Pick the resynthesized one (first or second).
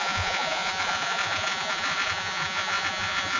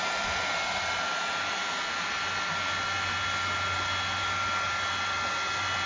first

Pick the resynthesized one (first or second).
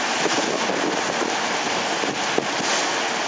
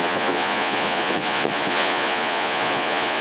second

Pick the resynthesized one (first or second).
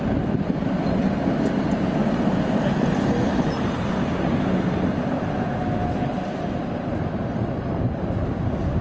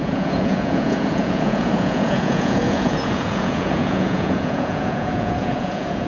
second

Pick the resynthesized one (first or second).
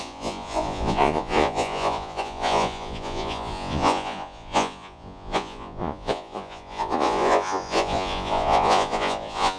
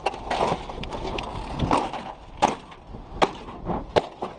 first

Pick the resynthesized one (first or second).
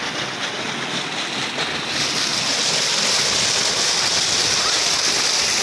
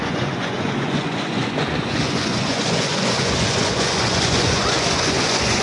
second